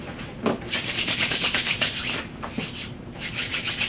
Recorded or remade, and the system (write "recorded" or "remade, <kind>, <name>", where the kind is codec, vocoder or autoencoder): remade, vocoder, BigVGAN v2